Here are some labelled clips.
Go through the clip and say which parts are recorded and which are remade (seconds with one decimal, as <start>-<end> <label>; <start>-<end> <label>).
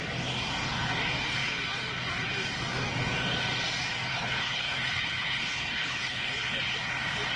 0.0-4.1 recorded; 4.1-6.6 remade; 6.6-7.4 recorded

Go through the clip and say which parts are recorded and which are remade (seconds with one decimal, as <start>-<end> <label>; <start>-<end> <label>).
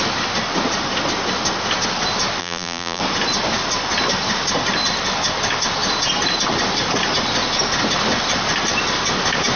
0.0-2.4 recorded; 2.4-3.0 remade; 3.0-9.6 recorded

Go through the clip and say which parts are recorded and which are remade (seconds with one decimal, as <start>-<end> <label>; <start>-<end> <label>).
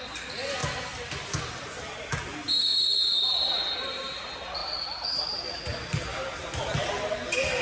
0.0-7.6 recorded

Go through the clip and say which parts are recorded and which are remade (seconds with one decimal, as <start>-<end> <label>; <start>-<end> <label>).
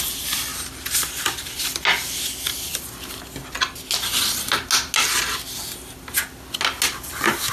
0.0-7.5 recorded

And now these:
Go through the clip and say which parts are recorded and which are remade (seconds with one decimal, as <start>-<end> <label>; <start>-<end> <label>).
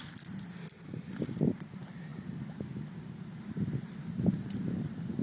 0.0-5.2 recorded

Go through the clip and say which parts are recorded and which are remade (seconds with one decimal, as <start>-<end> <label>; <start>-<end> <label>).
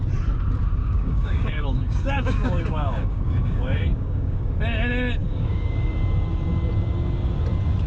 0.0-0.8 recorded; 0.8-4.5 remade; 4.5-5.2 recorded; 5.2-5.9 remade; 5.9-7.9 recorded